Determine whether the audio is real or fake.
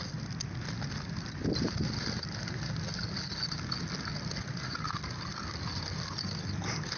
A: real